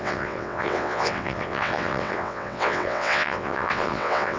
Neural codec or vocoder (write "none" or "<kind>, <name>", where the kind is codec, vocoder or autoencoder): vocoder, WaveNeXt